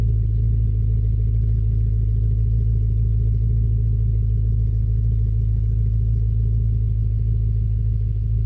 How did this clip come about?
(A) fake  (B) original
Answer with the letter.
B